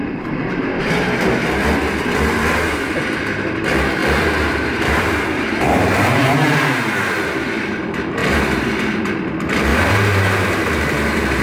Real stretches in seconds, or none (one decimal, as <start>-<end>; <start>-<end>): 0.0-4.0; 6.8-8.2; 9.1-9.7